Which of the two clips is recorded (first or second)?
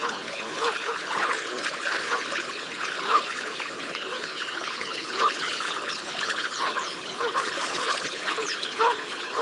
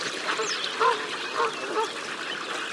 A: second